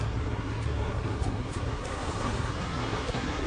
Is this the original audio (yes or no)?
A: no